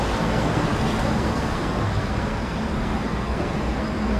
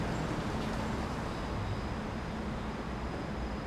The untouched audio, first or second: second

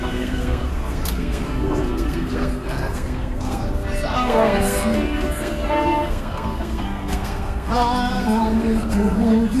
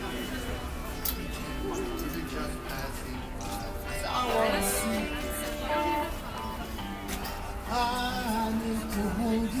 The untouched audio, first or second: second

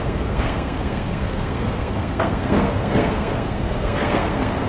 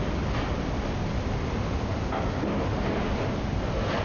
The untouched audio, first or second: second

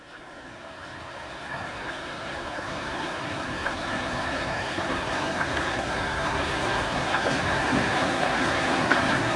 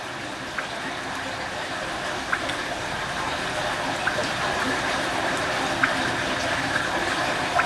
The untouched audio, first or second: second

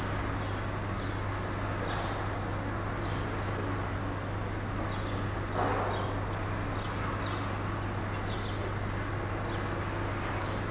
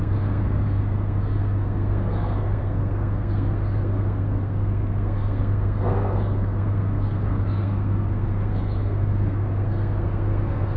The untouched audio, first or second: first